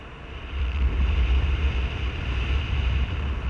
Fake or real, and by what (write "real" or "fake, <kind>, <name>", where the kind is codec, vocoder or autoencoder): fake, vocoder, BigVGAN v2